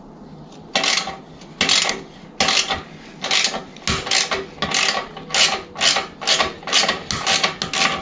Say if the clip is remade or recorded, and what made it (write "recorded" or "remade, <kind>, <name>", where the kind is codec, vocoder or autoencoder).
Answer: recorded